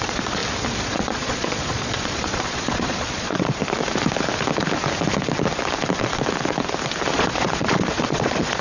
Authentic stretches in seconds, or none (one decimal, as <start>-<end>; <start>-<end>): 0.4-0.9; 3.6-7.1